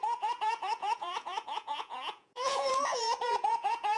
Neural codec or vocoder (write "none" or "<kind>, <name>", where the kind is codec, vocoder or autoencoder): vocoder, Vocos